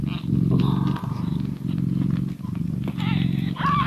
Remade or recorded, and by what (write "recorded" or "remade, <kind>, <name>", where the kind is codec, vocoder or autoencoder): recorded